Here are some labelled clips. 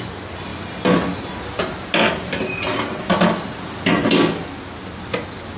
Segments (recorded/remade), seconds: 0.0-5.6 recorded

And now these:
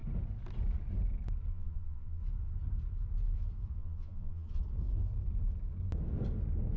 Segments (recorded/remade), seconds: 0.0-1.5 recorded; 1.5-2.2 remade; 2.2-3.8 recorded; 3.8-4.6 remade; 4.6-6.8 recorded